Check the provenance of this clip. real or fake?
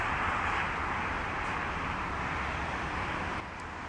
real